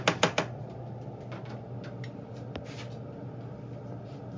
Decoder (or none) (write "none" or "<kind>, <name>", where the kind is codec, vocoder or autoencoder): none